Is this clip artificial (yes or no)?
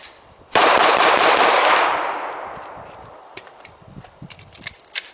yes